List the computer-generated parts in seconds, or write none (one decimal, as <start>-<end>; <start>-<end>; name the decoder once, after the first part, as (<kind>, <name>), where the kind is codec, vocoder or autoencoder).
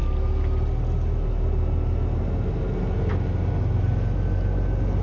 none